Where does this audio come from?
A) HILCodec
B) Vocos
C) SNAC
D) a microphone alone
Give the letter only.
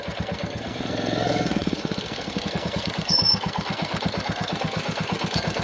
C